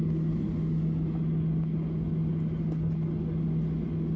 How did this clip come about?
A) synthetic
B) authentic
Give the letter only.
B